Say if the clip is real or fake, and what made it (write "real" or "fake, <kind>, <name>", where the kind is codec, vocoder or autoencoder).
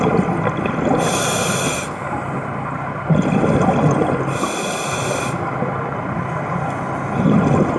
real